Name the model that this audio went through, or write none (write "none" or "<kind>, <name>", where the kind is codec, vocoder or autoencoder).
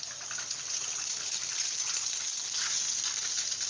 none